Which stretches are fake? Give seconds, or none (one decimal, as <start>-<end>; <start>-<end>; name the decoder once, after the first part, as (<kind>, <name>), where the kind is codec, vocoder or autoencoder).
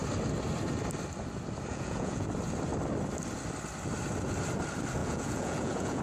1.7-2.3 (vocoder, Vocos); 5.0-6.0